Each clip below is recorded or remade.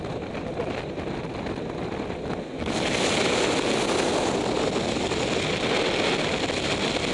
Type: recorded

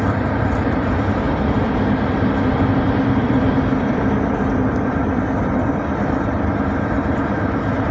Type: remade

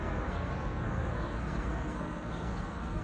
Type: remade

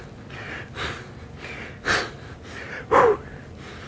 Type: recorded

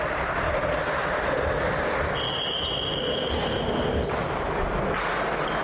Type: recorded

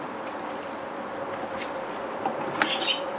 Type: recorded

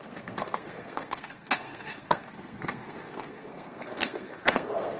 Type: remade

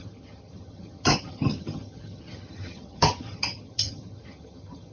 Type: remade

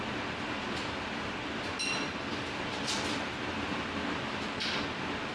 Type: recorded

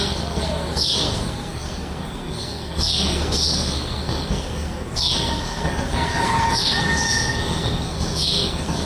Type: remade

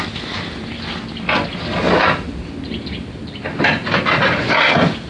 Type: recorded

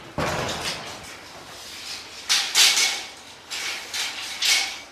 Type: recorded